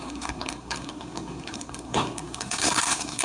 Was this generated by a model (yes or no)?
yes